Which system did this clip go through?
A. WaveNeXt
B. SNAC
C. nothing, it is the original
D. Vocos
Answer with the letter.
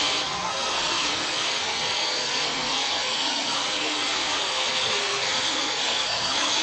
B